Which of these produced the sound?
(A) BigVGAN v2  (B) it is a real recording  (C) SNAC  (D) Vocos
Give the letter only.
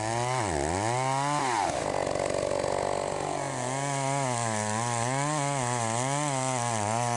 B